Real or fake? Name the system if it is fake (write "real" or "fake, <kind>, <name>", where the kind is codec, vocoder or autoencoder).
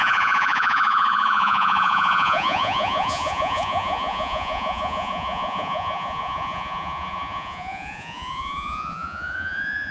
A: fake, vocoder, Vocos